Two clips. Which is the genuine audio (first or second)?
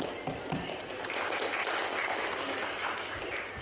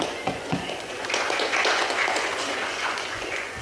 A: first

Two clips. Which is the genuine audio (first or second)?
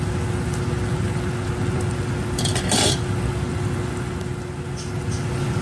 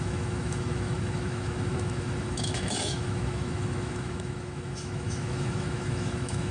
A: first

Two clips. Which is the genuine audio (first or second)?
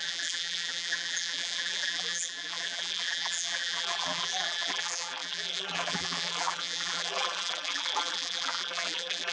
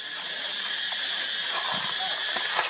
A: second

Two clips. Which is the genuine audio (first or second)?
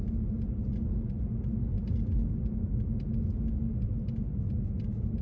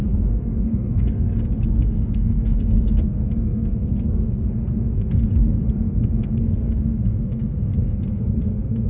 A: first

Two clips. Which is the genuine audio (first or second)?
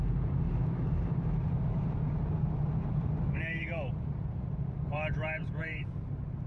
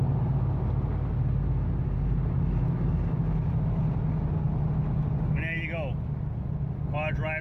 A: second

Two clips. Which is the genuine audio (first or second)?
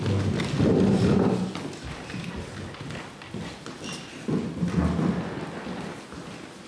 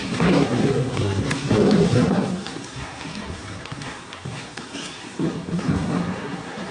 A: first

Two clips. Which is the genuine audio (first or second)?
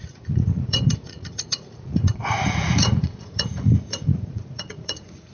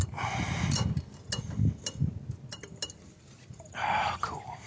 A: second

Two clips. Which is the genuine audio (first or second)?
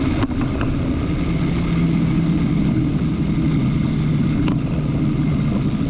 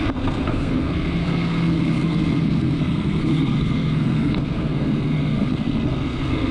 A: first